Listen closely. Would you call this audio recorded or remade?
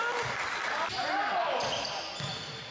recorded